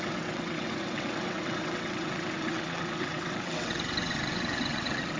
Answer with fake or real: fake